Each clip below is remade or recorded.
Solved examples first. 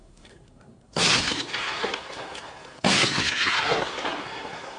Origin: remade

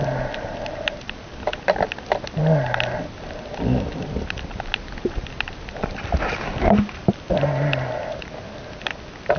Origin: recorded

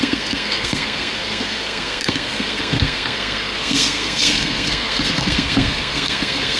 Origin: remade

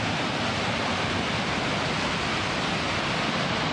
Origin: recorded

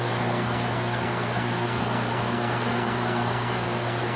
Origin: remade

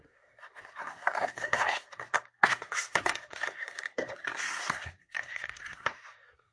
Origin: remade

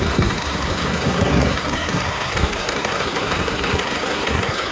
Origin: remade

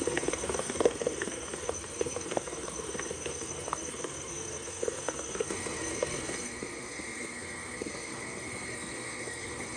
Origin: remade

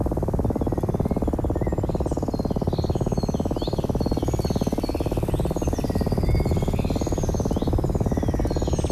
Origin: recorded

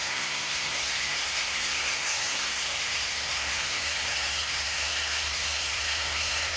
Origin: remade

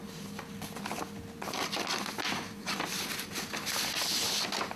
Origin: recorded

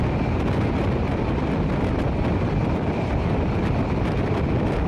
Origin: recorded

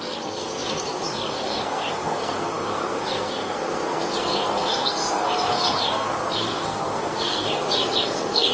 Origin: remade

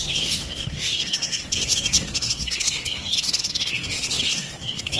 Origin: remade